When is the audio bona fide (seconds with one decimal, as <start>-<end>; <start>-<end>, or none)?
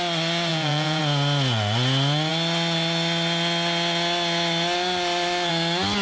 0.0-0.5; 1.0-6.0